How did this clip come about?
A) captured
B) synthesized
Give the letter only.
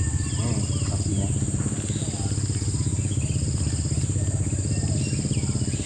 A